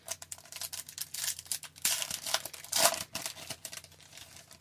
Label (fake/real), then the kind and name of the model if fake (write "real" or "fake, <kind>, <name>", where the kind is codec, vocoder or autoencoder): real